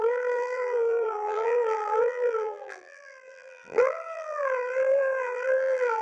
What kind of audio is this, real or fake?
fake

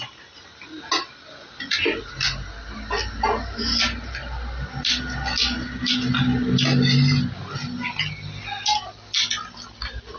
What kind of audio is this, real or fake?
real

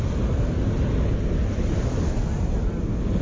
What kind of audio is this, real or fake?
real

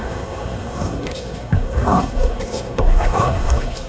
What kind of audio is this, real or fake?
fake